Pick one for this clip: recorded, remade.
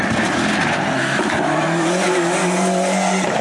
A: recorded